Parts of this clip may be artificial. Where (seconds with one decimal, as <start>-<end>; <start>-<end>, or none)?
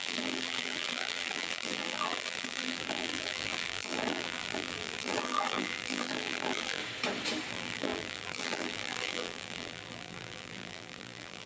0.0-6.8; 7.5-11.5